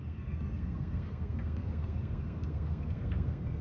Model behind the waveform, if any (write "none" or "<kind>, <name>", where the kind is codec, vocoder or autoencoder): codec, SNAC